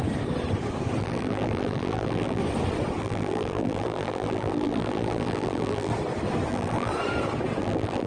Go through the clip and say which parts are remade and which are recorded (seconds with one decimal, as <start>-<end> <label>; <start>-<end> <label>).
0.0-1.0 recorded; 1.0-2.4 remade; 2.4-3.0 recorded; 3.0-5.9 remade; 5.9-6.5 recorded; 6.5-6.9 remade; 6.9-7.6 recorded; 7.6-8.1 remade